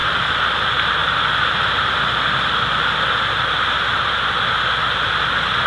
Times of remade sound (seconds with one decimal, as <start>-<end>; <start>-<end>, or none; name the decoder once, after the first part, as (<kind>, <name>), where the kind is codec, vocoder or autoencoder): none